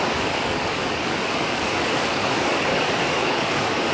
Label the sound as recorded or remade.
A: remade